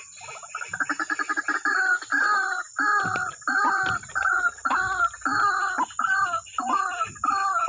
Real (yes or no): yes